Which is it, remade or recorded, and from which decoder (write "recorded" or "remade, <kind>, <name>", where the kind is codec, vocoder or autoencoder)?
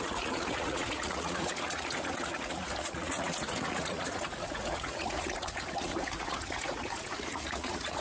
remade, vocoder, Vocos